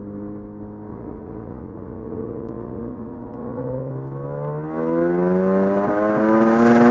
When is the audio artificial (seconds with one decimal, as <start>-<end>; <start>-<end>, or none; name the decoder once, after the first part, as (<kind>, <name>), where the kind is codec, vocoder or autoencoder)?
0.9-3.9 (vocoder, Vocos)